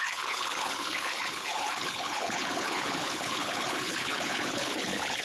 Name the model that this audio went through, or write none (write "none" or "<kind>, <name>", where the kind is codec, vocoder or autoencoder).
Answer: codec, HILCodec